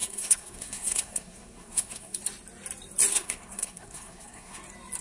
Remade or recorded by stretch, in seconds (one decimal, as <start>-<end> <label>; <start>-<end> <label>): 0.0-2.2 remade; 2.2-3.1 recorded; 3.1-4.6 remade; 4.6-5.0 recorded